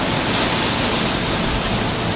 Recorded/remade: recorded